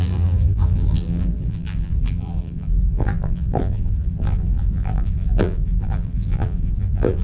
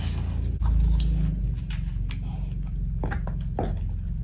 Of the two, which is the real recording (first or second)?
second